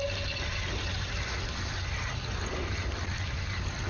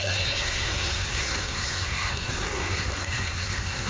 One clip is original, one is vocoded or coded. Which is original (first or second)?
first